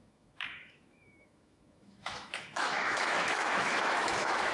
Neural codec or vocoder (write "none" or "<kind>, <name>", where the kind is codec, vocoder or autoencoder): autoencoder, DAC-VAE